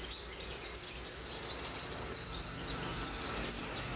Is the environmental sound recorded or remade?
recorded